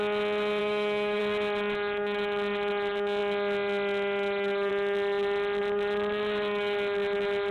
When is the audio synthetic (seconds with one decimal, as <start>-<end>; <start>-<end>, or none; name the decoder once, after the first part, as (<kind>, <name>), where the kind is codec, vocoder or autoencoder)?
0.6-1.2 (autoencoder, DAC-VAE)